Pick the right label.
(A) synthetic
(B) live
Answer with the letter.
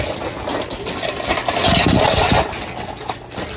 B